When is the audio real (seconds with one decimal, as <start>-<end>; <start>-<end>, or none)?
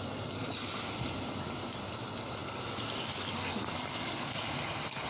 0.0-5.1